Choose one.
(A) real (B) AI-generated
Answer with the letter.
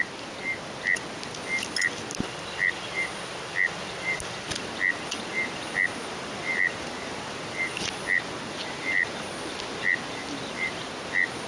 A